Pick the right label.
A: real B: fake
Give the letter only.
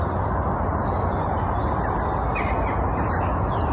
A